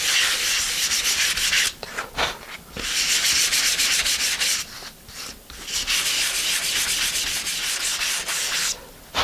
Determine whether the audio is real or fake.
real